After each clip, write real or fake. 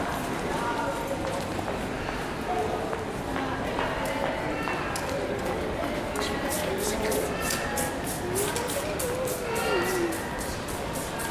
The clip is real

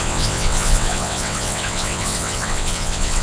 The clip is fake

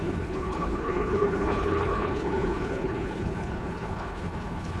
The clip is fake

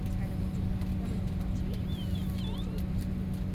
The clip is real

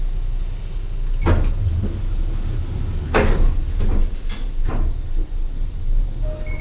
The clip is real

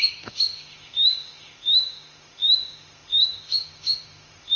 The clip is fake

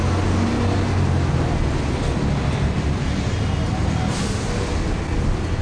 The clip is real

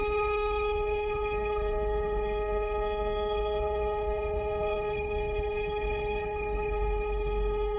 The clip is fake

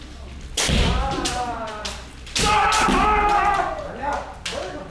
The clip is real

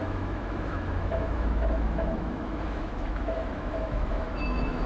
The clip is fake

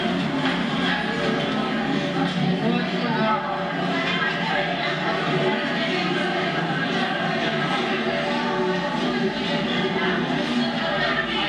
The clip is real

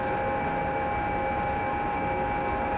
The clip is real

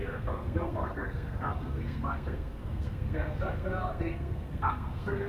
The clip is fake